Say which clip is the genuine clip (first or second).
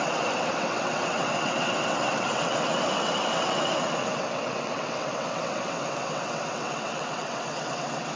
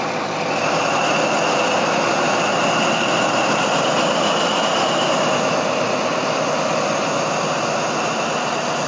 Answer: second